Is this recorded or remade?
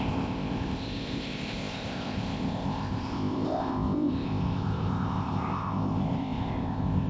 remade